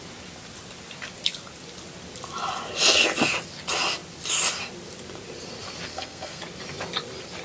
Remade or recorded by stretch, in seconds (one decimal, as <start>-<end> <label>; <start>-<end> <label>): 0.0-5.9 recorded; 5.9-6.4 remade; 6.4-7.4 recorded